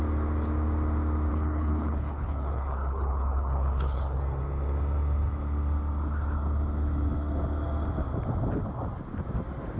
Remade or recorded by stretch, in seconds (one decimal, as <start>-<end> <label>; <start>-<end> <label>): 0.0-1.3 recorded; 1.3-4.2 remade; 4.2-9.8 recorded